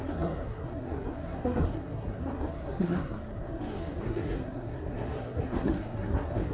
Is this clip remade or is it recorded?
remade